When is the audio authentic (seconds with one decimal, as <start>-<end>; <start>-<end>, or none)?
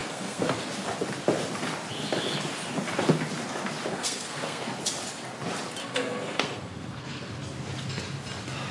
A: 0.7-3.9; 4.8-5.8; 7.3-8.7